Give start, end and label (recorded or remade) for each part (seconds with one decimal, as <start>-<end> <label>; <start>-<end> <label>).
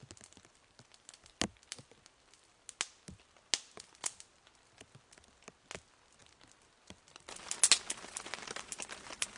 0.0-9.4 recorded